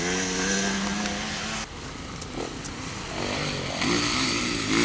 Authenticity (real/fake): real